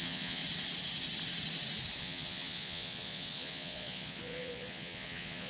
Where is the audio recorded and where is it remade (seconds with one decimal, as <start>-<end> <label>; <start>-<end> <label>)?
0.0-0.4 remade; 0.4-2.0 recorded; 2.0-5.5 remade